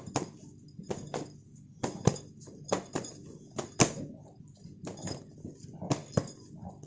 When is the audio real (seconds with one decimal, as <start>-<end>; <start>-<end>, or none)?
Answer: 0.0-6.9